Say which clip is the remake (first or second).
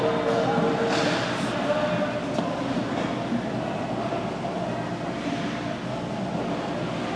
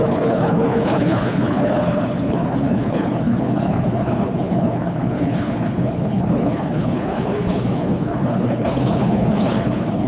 second